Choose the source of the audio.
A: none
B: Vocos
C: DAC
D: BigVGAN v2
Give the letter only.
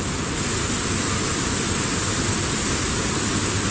A